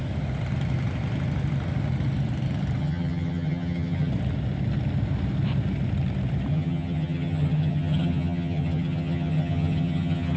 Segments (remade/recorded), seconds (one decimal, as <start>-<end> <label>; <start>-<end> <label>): 0.0-2.8 recorded; 2.8-4.1 remade; 4.1-6.5 recorded; 6.5-10.4 remade